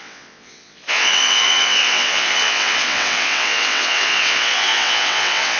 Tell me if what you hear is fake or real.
fake